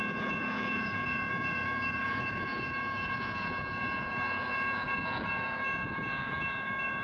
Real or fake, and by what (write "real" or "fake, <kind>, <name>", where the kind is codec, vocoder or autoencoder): fake, vocoder, Vocos